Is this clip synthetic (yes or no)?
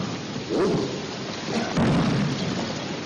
no